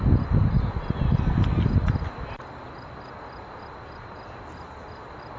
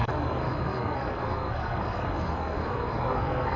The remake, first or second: second